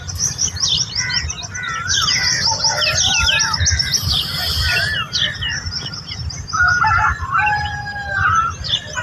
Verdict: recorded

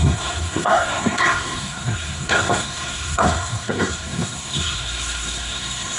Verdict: remade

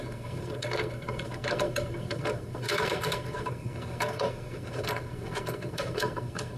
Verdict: remade